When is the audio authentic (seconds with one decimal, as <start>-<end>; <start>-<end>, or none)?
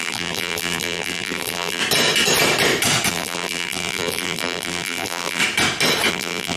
1.8-3.1; 5.4-6.1